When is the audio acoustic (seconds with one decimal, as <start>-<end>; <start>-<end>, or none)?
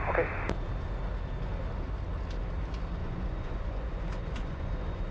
0.0-3.0